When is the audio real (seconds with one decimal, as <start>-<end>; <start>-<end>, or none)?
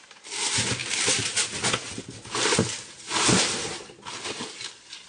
0.0-5.1